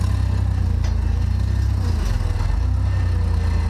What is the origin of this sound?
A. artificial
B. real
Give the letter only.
B